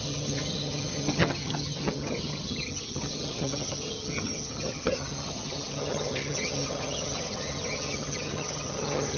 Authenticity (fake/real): fake